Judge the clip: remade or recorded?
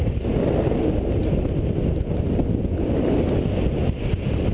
recorded